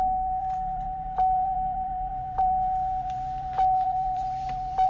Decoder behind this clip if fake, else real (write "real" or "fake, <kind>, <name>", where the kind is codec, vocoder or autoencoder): fake, vocoder, BigVGAN v2